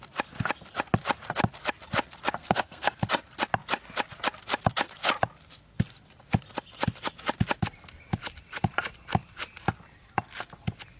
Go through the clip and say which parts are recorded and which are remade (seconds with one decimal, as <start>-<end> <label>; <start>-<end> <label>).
0.0-2.4 recorded; 2.4-3.1 remade; 3.1-11.0 recorded